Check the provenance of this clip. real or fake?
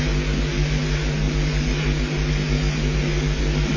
real